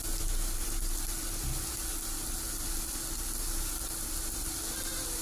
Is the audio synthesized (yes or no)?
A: no